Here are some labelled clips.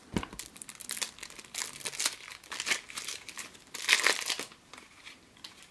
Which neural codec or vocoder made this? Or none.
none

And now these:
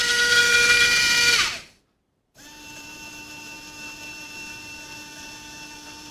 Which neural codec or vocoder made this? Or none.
vocoder, BigVGAN v2